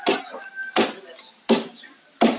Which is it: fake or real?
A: real